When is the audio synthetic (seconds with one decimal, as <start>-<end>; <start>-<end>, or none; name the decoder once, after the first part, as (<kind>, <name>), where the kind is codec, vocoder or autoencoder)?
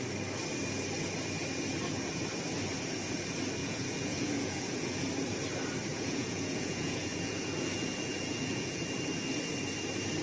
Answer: 3.6-5.0 (vocoder, Vocos); 5.9-8.8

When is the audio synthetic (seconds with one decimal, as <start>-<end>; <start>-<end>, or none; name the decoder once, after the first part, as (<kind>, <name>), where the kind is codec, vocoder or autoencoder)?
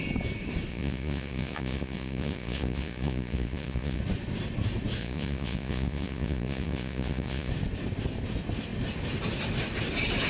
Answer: 0.7-4.0 (vocoder, Vocos); 5.0-7.5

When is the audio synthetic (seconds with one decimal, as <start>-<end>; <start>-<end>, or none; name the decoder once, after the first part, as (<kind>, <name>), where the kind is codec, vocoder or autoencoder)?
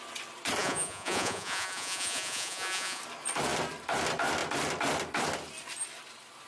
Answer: 0.6-3.0 (vocoder, Vocos)